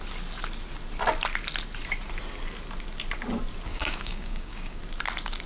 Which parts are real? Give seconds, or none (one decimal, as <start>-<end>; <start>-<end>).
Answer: 0.0-3.7; 4.8-5.5